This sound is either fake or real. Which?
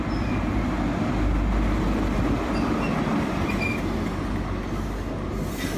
real